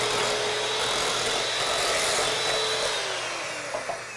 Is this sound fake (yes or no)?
no